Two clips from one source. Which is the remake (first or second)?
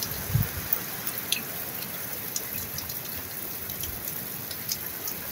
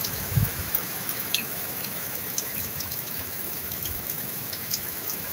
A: second